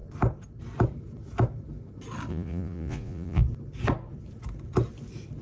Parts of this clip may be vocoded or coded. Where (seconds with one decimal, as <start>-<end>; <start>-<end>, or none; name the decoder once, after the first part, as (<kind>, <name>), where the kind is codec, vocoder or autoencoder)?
2.3-3.4 (vocoder, Vocos)